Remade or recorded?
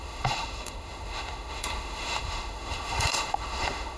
remade